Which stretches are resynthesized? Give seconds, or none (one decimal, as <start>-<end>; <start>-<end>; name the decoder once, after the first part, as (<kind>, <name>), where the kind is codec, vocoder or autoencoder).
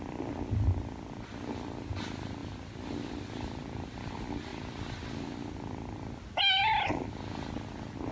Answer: none